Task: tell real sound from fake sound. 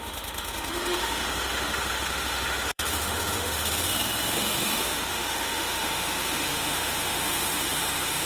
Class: fake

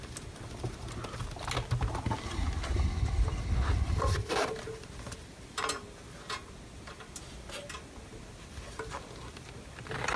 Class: real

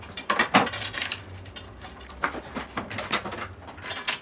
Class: real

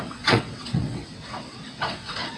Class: fake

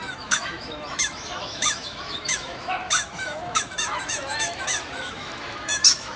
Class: fake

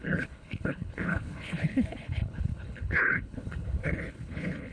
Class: fake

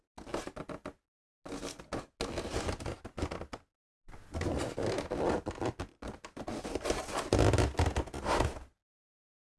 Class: real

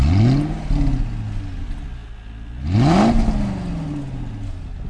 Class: real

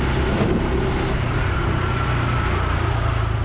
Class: real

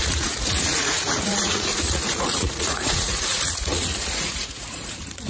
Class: fake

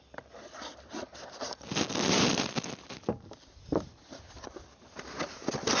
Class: fake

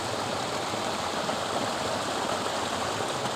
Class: real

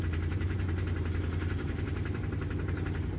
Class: fake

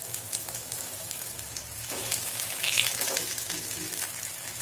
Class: fake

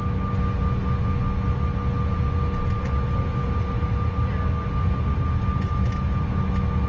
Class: real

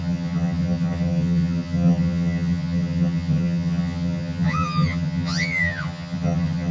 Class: fake